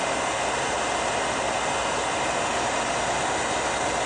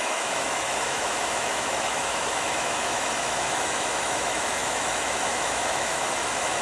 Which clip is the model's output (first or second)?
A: second